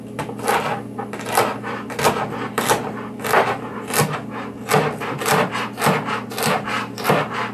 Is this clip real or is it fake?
real